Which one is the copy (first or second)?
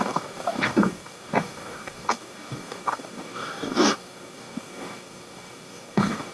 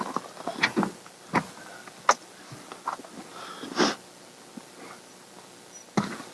first